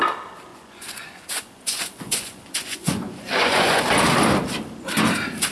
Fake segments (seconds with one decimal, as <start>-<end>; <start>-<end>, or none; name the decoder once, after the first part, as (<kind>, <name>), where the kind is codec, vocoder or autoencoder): 0.5-3.8 (vocoder, Vocos)